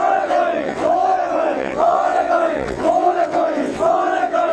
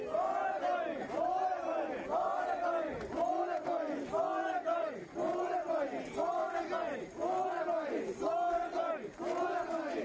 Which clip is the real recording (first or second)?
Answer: second